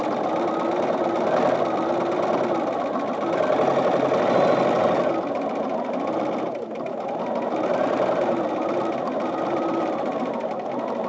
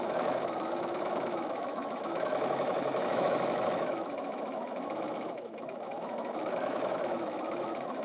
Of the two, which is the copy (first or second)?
second